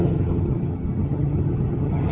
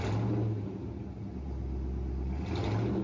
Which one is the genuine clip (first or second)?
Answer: second